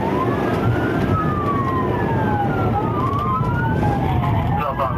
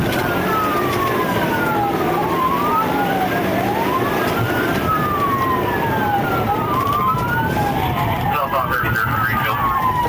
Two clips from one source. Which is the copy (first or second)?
second